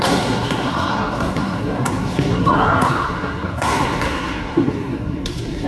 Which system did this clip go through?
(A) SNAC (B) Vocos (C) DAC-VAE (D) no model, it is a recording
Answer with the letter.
A